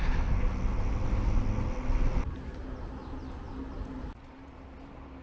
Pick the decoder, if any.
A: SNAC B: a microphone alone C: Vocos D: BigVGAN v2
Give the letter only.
B